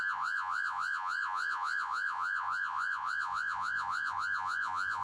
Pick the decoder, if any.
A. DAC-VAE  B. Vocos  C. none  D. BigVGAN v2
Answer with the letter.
B